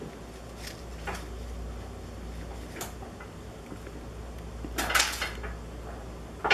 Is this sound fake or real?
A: real